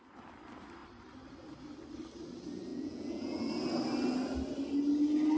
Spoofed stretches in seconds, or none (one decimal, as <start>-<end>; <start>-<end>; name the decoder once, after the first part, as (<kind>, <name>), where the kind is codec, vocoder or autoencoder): 2.7-3.5 (vocoder, Vocos)